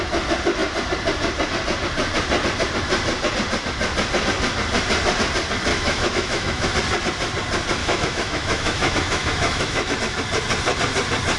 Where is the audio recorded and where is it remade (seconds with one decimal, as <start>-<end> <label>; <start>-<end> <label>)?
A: 0.0-5.7 recorded; 5.7-6.7 remade; 6.7-7.8 recorded; 7.8-10.0 remade; 10.0-11.4 recorded